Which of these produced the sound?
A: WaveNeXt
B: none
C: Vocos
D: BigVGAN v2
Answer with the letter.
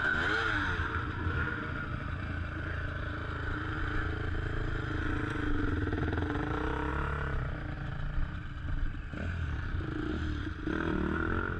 B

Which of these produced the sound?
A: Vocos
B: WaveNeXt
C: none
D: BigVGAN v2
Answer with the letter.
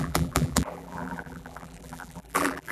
D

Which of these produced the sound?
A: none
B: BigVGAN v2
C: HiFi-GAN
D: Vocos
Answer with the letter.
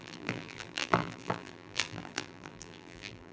B